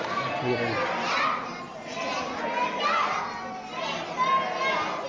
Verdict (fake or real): real